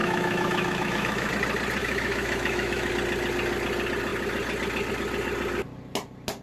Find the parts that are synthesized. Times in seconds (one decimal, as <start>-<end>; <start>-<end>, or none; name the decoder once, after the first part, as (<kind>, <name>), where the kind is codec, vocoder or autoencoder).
0.0-1.3 (autoencoder, DAC-VAE); 1.8-2.9